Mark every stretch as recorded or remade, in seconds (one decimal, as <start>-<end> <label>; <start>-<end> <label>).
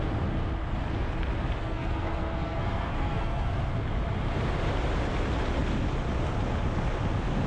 0.0-1.6 recorded; 1.6-3.6 remade; 3.6-7.5 recorded